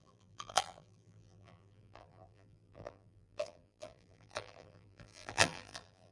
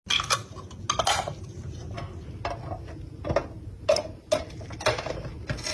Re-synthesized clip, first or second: first